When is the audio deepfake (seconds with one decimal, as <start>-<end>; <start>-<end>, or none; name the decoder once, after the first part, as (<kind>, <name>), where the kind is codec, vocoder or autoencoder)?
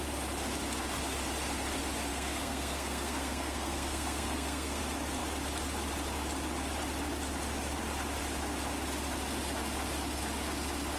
2.1-4.8 (codec, SNAC)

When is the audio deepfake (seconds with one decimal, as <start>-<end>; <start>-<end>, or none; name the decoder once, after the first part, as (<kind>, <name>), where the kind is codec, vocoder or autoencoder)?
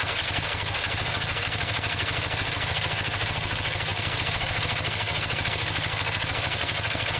0.0-7.2 (codec, SNAC)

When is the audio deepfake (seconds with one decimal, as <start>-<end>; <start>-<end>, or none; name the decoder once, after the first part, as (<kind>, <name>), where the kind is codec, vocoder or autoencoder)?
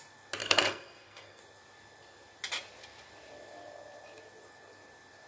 0.4-1.4 (codec, SNAC)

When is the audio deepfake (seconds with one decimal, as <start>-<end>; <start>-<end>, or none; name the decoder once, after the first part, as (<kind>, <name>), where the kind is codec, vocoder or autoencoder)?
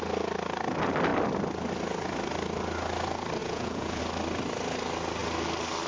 3.4-4.0 (vocoder, Vocos)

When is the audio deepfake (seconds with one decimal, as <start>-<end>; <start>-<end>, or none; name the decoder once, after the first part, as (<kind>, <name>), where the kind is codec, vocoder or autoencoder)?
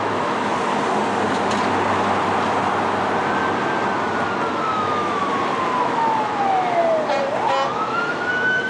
0.0-0.7 (autoencoder, DAC-VAE); 4.5-5.3; 5.8-6.8; 7.7-8.7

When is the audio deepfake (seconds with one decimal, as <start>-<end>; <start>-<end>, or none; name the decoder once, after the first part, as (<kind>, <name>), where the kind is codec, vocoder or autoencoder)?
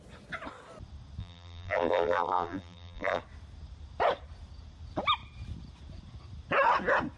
1.2-3.2 (vocoder, BigVGAN v2)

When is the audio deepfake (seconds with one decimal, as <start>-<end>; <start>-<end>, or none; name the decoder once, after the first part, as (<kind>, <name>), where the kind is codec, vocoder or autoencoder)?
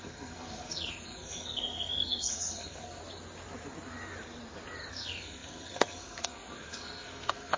0.0-3.0 (codec, SNAC); 4.9-7.6